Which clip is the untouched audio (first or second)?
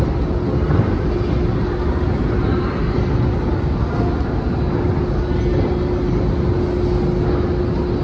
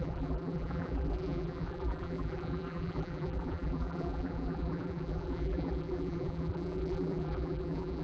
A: first